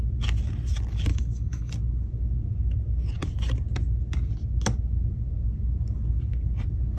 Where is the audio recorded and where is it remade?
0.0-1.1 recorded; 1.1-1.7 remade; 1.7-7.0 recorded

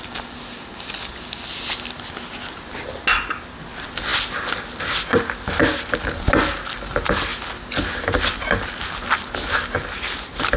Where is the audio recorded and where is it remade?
0.0-10.6 recorded